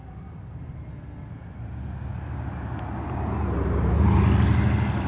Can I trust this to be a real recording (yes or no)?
yes